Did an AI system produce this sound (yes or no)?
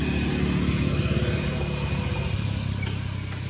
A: no